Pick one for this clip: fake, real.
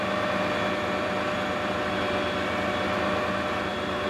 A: real